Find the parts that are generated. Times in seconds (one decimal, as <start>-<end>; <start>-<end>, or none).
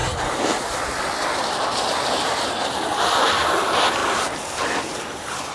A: none